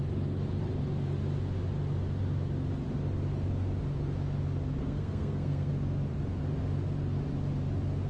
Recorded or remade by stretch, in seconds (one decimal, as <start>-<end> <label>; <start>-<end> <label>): 0.0-4.8 recorded; 4.8-5.7 remade; 5.7-8.1 recorded